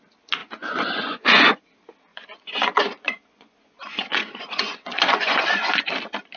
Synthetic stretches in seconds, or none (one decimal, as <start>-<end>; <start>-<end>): 0.4-1.6; 2.1-5.9